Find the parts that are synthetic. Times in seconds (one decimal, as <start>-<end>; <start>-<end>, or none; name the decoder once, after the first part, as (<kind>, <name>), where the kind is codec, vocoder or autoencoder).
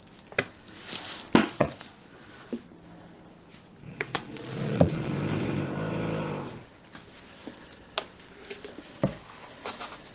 1.4-2.5 (vocoder, Vocos); 3.9-5.1